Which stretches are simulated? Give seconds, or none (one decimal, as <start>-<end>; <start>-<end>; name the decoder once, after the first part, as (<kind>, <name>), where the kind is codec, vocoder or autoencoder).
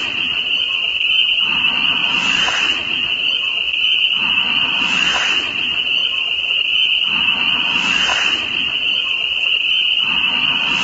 6.0-6.5 (vocoder, BigVGAN v2); 8.1-10.8